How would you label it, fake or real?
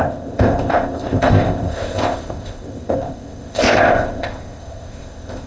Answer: fake